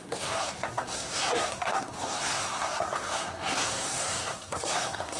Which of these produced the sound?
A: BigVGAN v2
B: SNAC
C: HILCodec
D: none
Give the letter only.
B